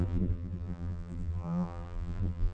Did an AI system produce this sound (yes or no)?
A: yes